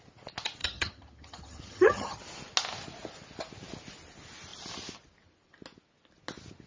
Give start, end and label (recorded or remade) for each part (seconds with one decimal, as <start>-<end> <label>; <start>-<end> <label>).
0.0-0.6 recorded; 0.6-2.2 remade; 2.2-6.7 recorded